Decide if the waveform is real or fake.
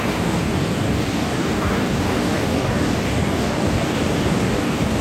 fake